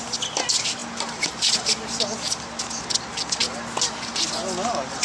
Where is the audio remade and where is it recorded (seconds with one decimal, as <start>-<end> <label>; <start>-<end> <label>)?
0.0-5.0 recorded